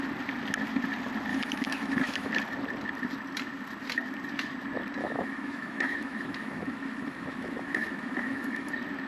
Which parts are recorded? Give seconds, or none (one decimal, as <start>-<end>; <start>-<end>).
0.0-1.3; 2.3-5.0; 8.7-9.1